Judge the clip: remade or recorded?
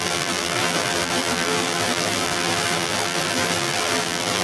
remade